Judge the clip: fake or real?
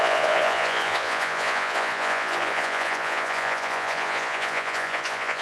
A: fake